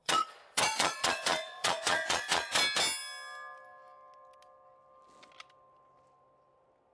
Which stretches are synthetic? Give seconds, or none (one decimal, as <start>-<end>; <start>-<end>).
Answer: 0.0-2.6